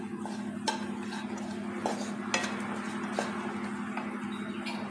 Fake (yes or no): no